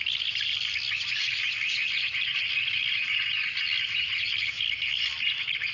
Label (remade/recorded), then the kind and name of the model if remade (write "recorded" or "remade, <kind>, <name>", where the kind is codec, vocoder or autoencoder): recorded